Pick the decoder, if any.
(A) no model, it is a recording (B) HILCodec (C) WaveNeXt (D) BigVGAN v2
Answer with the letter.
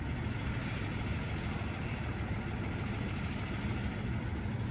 A